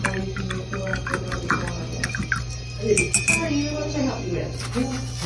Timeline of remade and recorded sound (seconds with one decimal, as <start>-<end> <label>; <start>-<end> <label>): 0.0-5.3 recorded